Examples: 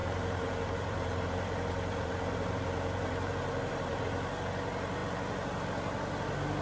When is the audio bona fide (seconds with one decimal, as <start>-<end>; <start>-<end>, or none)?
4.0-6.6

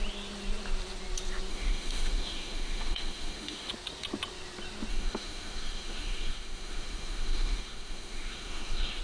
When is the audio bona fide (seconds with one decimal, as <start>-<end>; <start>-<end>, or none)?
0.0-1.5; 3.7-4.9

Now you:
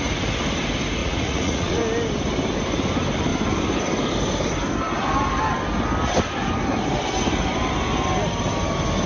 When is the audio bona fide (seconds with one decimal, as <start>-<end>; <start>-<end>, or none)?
0.0-1.0; 1.8-9.1

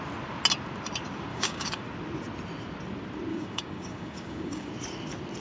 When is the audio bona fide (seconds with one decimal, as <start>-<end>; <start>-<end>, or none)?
0.0-1.3; 1.8-3.3; 4.7-5.4